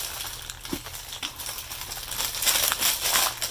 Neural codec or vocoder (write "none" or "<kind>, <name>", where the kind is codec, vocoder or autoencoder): none